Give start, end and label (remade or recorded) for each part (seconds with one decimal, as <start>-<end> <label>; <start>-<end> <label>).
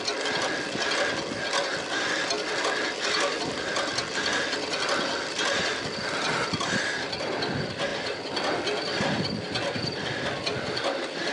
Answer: 0.0-11.3 recorded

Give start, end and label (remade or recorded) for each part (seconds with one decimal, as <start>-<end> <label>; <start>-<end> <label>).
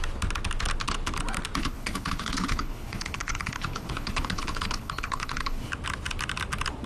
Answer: 0.0-1.6 recorded; 1.6-5.7 remade; 5.7-6.9 recorded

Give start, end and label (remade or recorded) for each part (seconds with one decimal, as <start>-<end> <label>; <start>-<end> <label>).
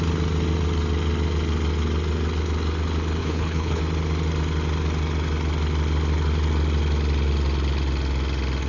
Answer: 0.0-3.2 recorded; 3.2-3.8 remade; 3.8-8.7 recorded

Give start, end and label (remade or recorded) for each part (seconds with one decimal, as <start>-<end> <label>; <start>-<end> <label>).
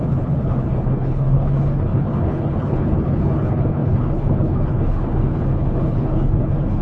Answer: 0.0-6.8 remade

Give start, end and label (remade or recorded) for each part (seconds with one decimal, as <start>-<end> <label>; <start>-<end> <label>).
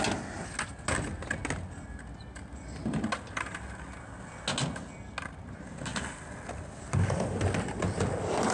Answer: 0.0-8.5 recorded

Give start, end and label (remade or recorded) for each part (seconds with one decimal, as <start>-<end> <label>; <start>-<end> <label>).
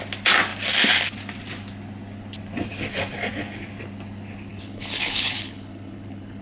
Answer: 0.0-4.5 recorded; 4.5-6.4 remade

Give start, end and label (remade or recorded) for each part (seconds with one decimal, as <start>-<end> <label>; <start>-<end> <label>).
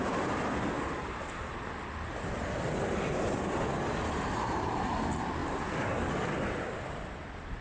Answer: 0.0-7.6 recorded